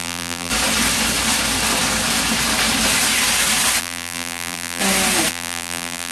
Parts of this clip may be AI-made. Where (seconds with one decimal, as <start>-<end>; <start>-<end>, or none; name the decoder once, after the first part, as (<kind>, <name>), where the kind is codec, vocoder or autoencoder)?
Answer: 0.0-0.5 (vocoder, BigVGAN v2); 3.8-4.8; 5.3-6.1